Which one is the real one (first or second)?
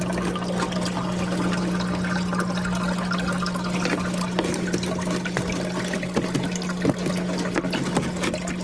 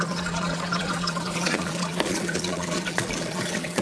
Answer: first